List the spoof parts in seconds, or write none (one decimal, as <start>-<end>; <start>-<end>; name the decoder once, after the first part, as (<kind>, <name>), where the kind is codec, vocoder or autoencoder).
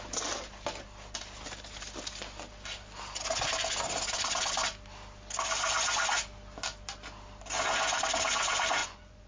8.8-9.3 (vocoder, Vocos)